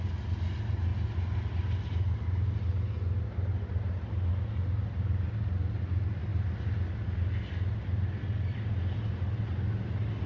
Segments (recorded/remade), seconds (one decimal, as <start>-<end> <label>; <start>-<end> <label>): 0.0-10.3 recorded